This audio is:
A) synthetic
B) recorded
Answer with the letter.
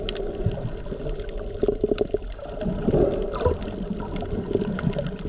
B